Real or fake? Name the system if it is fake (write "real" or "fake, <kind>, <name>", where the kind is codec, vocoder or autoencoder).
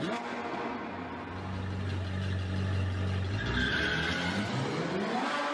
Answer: real